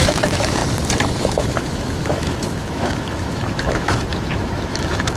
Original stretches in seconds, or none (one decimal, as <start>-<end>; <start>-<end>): 0.6-1.2